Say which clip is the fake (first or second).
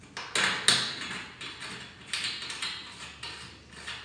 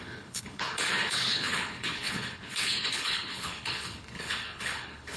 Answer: second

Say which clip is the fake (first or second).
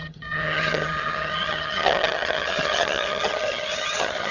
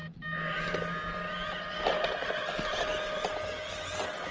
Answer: first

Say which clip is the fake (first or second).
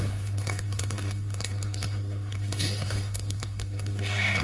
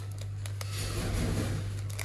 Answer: first